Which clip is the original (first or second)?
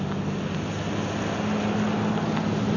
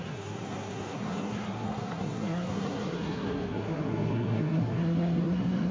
first